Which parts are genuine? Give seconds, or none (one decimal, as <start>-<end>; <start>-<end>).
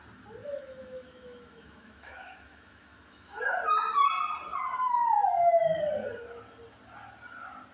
0.0-0.4; 3.4-7.7